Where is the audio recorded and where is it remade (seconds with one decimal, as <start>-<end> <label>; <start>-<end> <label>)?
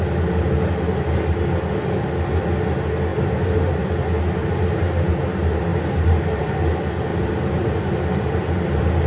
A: 0.0-3.1 recorded; 3.1-3.9 remade; 3.9-4.4 recorded; 4.4-5.1 remade; 5.1-5.7 recorded; 5.7-6.6 remade; 6.6-7.1 recorded; 7.1-9.1 remade